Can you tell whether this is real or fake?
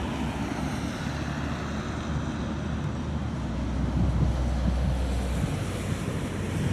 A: real